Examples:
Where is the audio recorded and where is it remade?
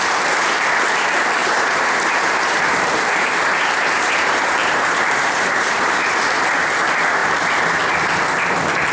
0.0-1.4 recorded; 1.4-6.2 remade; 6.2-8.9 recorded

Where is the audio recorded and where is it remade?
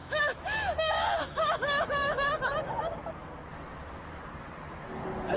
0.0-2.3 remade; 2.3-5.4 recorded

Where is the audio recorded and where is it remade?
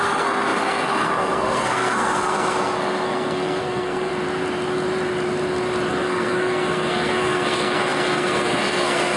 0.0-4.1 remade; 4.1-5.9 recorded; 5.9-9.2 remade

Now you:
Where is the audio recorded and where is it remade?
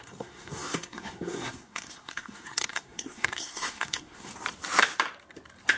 0.0-4.3 remade; 4.3-5.8 recorded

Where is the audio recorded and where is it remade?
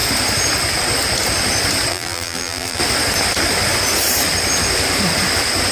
0.0-1.9 recorded; 1.9-2.8 remade; 2.8-5.7 recorded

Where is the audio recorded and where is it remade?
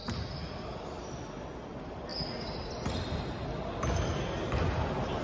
0.0-5.2 recorded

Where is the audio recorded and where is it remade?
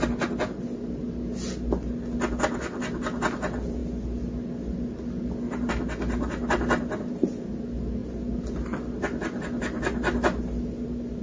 0.0-11.2 recorded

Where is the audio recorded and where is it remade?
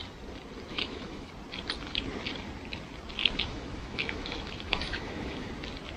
0.0-0.7 recorded; 0.7-1.3 remade; 1.3-3.2 recorded; 3.2-5.5 remade; 5.5-6.0 recorded